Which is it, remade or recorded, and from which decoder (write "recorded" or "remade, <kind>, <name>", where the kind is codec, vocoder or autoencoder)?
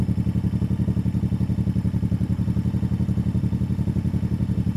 recorded